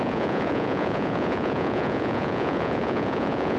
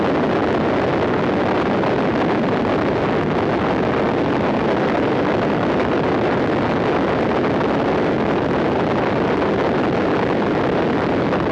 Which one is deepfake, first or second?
first